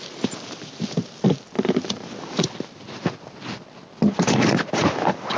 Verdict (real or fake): real